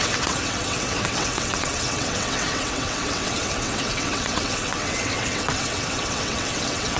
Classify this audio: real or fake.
fake